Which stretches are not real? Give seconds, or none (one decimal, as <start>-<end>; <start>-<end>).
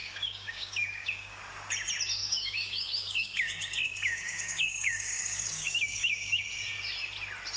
0.0-1.4; 2.2-6.4